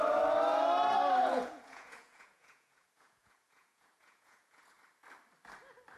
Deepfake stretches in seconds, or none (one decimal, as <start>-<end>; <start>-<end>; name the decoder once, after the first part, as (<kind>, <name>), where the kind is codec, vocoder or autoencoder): 1.2-4.8 (vocoder, Vocos)